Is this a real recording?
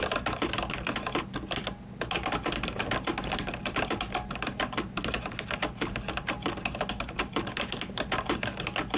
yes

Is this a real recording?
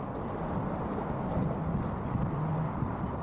yes